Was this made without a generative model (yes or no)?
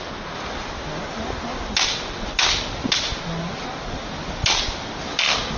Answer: yes